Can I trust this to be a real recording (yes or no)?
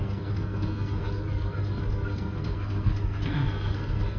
no